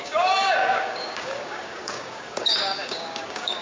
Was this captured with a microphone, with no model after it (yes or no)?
no